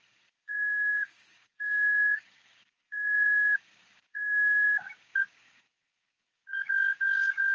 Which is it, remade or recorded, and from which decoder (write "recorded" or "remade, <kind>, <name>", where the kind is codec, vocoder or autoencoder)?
remade, codec, DAC